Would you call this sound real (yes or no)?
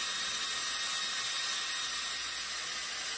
yes